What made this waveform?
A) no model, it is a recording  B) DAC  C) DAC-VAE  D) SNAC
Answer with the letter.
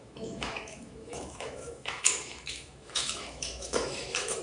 C